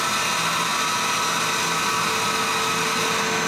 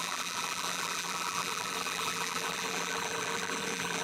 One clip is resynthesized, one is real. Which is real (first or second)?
first